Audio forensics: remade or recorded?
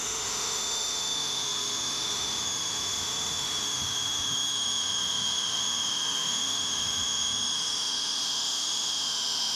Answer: remade